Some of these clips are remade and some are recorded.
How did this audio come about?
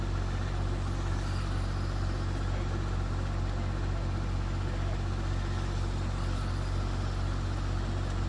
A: recorded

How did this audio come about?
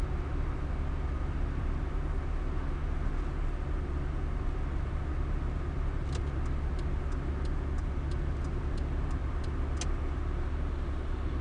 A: recorded